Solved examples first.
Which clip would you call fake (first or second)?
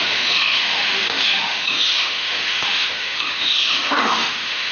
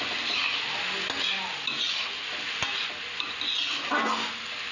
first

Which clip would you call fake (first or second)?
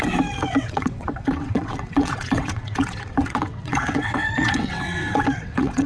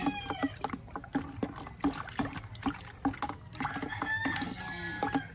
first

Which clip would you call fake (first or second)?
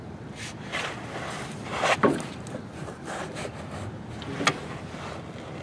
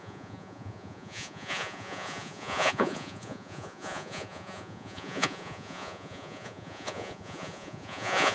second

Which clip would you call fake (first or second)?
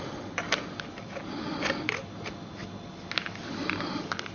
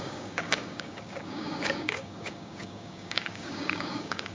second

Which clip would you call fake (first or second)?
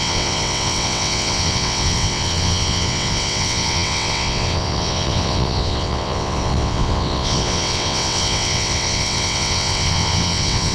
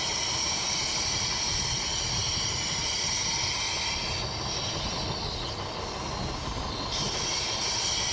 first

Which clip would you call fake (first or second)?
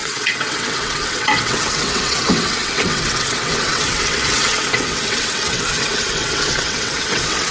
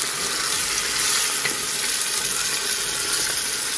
first